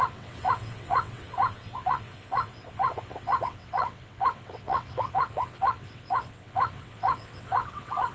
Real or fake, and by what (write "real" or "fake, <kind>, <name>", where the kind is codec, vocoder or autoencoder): fake, vocoder, WaveNeXt